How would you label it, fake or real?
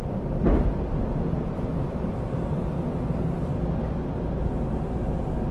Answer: real